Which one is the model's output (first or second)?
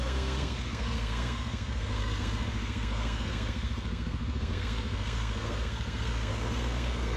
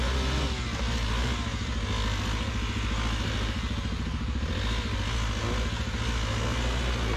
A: first